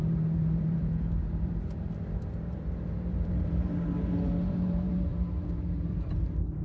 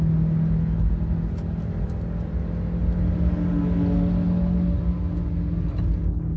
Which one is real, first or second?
second